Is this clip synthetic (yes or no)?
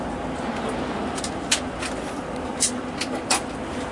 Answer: no